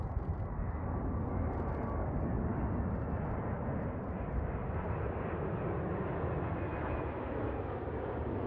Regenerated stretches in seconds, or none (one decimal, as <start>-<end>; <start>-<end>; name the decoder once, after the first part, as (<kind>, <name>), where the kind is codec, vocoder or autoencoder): none